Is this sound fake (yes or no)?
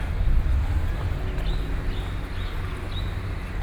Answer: no